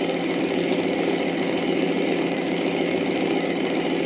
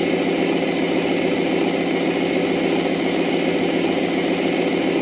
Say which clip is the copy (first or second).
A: first